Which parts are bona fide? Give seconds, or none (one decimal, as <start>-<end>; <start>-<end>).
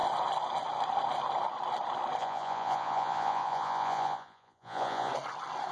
0.0-2.2; 5.1-5.7